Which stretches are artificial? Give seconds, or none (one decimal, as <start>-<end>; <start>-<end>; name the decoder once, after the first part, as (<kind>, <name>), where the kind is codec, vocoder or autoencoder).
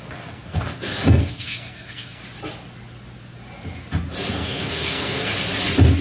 0.0-2.2 (codec, SNAC); 4.3-5.3